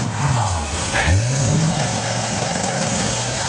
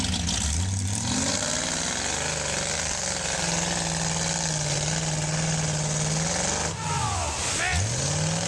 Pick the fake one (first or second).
first